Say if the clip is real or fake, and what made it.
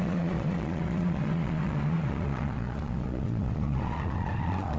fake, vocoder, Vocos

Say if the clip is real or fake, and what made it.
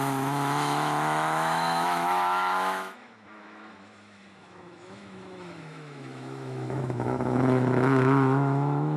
fake, autoencoder, DAC-VAE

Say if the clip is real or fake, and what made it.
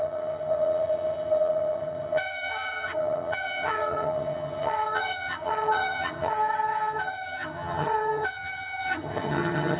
fake, vocoder, HiFi-GAN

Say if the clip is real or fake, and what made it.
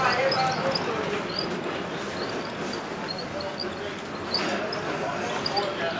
real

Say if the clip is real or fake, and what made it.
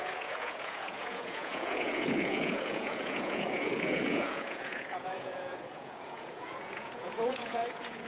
fake, vocoder, Vocos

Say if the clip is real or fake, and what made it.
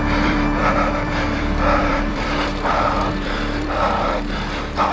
fake, vocoder, BigVGAN v2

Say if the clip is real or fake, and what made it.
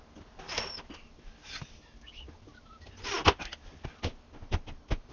real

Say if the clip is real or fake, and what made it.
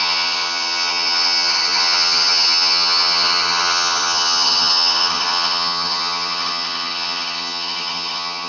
fake, vocoder, HiFi-GAN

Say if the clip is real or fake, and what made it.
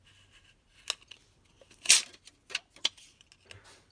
real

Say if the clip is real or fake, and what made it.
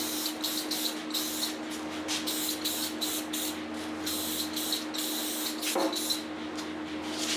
real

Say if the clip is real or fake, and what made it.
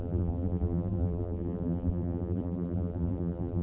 fake, vocoder, BigVGAN v2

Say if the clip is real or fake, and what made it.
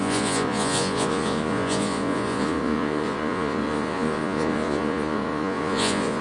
fake, vocoder, Vocos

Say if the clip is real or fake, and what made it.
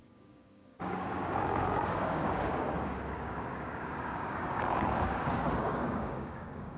fake, codec, DAC